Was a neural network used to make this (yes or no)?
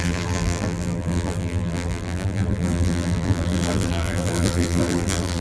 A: yes